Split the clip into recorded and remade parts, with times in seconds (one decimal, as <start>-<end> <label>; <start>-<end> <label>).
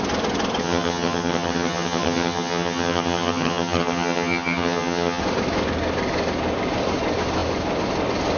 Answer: 0.0-0.6 recorded; 0.6-5.2 remade; 5.2-8.4 recorded